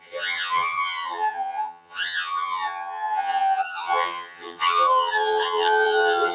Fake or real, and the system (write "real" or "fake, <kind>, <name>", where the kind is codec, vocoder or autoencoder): fake, vocoder, HiFi-GAN